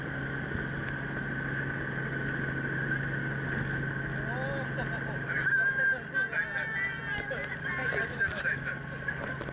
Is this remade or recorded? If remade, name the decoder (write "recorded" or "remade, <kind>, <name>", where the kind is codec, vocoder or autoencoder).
recorded